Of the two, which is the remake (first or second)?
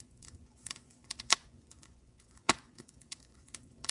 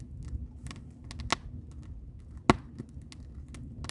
first